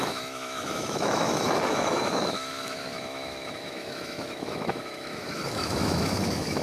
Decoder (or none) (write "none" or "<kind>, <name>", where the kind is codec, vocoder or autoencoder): autoencoder, DAC-VAE